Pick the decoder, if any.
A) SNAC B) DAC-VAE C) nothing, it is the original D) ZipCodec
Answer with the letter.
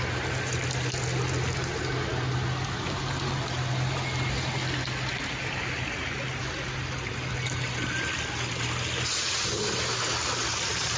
C